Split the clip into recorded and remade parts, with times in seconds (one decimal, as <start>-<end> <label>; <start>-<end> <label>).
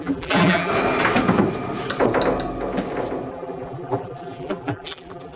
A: 0.0-0.7 remade; 0.7-3.3 recorded; 3.3-5.4 remade